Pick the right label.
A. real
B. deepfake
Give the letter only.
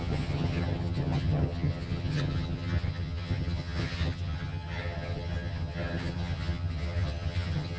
B